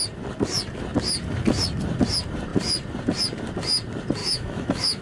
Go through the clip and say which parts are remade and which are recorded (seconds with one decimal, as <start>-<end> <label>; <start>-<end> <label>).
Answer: 0.0-4.2 recorded; 4.2-5.0 remade